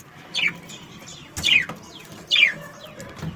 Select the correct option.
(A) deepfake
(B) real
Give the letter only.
B